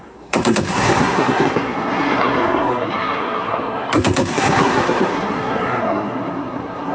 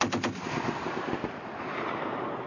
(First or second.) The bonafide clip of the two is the second